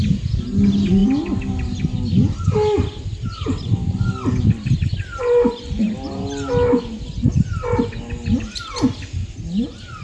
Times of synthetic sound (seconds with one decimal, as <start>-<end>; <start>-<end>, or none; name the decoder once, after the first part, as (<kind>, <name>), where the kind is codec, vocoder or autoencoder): none